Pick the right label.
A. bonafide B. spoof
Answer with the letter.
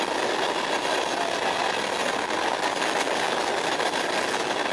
A